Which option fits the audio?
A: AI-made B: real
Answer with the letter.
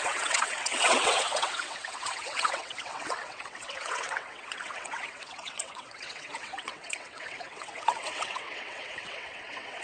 A